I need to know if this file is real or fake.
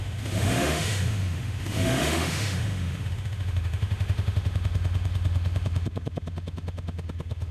fake